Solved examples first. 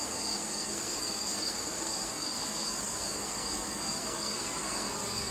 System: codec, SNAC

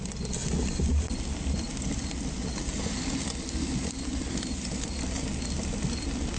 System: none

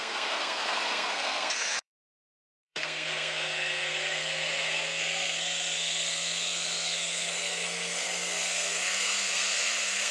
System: codec, SNAC